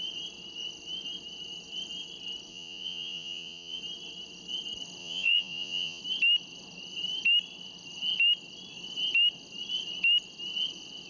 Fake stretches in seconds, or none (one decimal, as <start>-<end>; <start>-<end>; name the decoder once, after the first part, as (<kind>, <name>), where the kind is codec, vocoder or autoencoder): 2.5-3.8 (vocoder, Vocos); 5.0-6.0